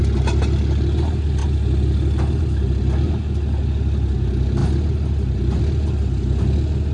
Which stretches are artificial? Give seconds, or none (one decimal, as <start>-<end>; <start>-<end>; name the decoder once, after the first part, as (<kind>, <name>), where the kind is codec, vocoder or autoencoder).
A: none